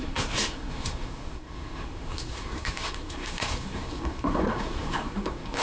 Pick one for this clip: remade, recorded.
remade